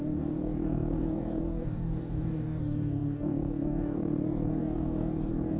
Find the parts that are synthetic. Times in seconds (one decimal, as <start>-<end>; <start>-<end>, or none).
0.0-5.6